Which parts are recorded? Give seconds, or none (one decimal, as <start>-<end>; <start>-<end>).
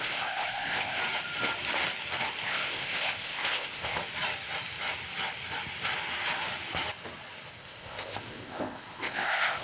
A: 1.0-2.4; 4.0-7.5